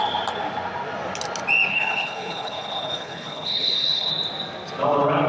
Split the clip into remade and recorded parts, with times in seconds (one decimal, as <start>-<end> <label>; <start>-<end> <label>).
0.0-1.7 recorded; 1.7-4.1 remade; 4.1-5.3 recorded